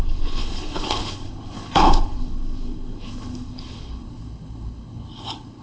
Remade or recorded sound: remade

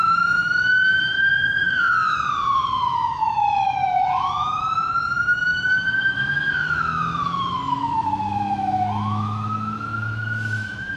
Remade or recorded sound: remade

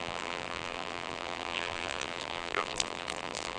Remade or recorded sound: remade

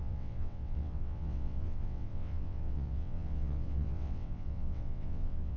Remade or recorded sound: remade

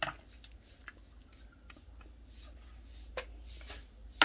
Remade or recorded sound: recorded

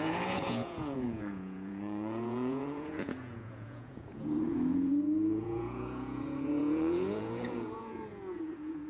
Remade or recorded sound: remade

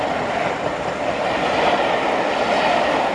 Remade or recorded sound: recorded